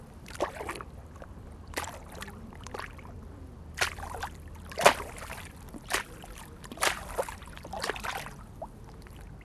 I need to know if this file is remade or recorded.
remade